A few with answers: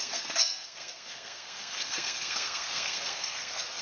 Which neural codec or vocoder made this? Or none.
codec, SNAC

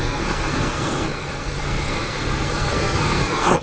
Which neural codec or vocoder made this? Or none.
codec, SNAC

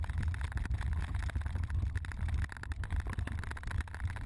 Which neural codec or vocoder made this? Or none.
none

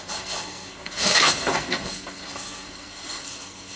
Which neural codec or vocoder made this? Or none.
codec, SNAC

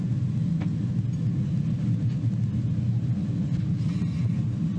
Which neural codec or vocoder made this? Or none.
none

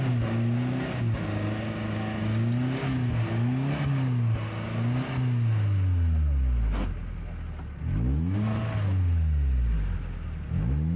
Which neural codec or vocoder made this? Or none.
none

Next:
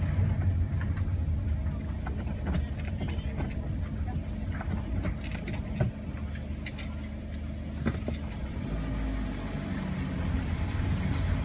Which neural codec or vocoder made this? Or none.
none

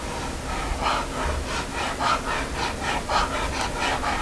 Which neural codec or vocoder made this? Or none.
none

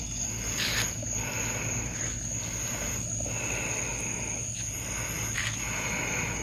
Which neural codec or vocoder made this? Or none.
none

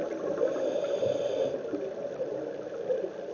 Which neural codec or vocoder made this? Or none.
none